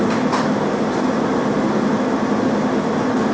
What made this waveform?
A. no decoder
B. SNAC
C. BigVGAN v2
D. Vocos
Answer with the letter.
A